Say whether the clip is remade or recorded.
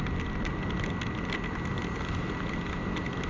recorded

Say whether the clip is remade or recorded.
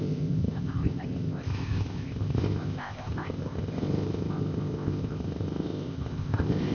remade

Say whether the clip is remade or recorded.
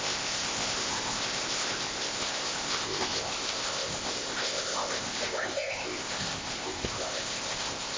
remade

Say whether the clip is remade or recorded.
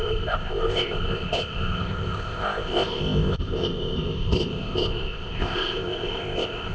remade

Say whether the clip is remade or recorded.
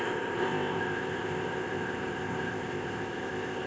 remade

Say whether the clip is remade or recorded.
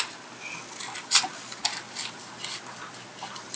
recorded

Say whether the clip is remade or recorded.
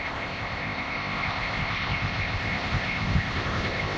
remade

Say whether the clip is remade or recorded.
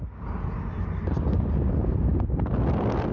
recorded